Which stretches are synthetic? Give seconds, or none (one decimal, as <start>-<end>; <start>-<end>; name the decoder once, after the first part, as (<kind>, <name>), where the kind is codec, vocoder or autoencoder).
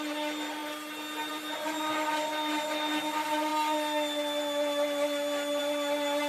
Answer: none